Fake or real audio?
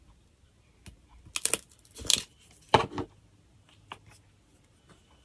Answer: real